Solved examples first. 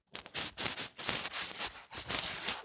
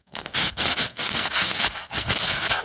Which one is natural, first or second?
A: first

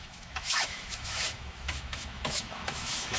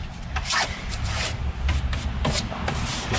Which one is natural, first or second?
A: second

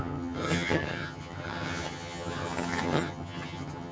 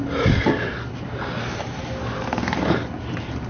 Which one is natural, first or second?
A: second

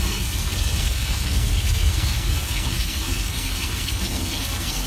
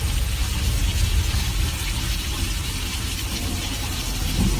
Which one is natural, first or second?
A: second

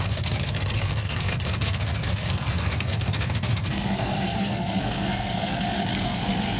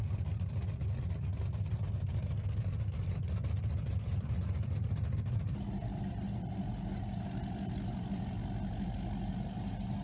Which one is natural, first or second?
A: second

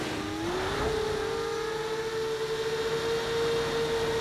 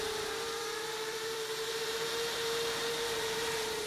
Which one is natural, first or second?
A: first